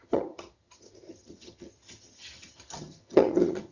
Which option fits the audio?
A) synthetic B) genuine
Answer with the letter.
A